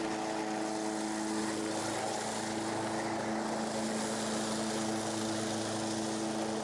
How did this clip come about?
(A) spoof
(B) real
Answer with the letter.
B